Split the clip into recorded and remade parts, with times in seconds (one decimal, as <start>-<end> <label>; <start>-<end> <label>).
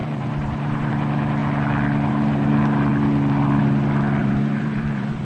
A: 0.0-0.9 remade; 0.9-4.2 recorded; 4.2-5.2 remade